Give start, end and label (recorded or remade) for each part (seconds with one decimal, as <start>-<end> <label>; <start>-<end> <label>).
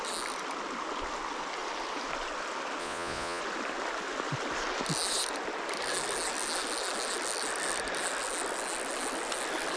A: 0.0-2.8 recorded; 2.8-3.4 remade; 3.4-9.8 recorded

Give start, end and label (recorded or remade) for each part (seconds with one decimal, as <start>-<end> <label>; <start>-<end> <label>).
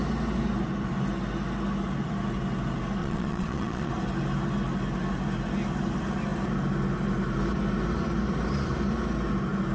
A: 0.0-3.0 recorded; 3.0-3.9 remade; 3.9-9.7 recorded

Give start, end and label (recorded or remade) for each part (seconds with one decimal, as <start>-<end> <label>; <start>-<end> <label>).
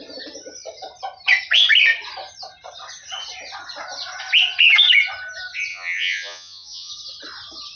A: 0.0-5.7 recorded; 5.7-6.9 remade; 6.9-7.8 recorded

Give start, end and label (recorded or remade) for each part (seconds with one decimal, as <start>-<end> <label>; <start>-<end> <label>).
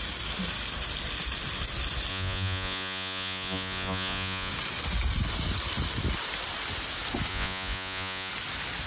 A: 0.0-2.1 recorded; 2.1-4.5 remade; 4.5-7.3 recorded; 7.3-8.3 remade; 8.3-8.9 recorded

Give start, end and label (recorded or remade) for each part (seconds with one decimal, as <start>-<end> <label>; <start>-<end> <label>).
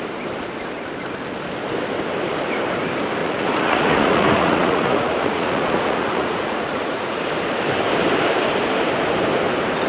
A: 0.0-3.2 recorded; 3.2-7.2 remade; 7.2-9.9 recorded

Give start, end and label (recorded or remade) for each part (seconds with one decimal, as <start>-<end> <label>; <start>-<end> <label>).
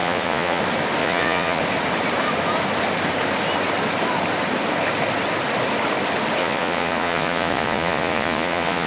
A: 0.0-0.6 remade; 0.6-1.0 recorded; 1.0-1.6 remade; 1.6-6.4 recorded; 6.4-8.9 remade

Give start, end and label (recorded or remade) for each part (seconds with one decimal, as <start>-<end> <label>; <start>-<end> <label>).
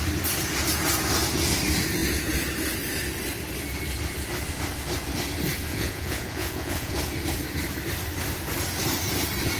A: 0.0-5.7 recorded; 5.7-6.9 remade; 6.9-9.6 recorded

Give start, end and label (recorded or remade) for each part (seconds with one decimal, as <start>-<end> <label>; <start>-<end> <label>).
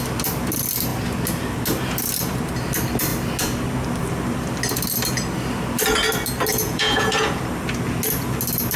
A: 0.0-6.5 recorded; 6.5-7.4 remade; 7.4-8.8 recorded